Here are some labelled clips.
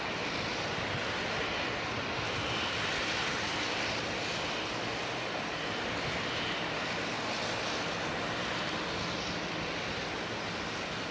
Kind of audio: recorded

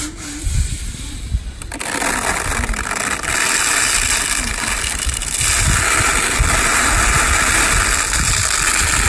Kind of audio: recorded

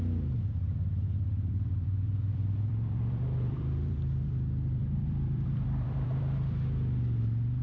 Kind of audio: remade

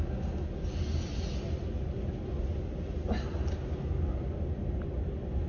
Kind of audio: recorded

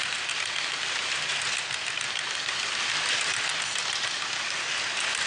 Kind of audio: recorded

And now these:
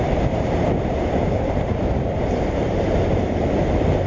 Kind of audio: remade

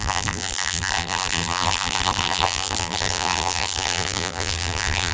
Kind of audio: remade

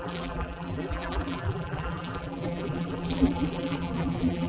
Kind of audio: remade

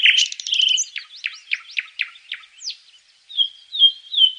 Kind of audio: recorded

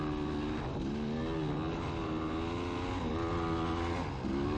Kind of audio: recorded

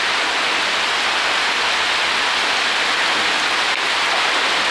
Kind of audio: recorded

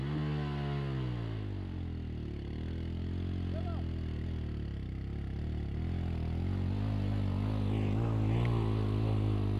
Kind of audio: recorded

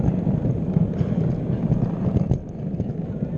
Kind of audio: recorded